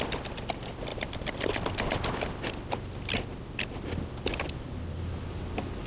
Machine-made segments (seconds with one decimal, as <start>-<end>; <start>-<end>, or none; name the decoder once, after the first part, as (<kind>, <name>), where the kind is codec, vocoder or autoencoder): none